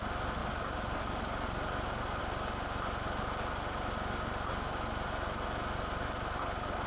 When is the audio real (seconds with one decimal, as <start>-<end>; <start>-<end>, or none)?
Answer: 0.0-0.4; 2.2-6.9